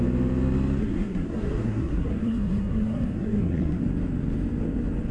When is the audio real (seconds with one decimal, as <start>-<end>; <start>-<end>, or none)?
0.0-0.8; 3.8-5.1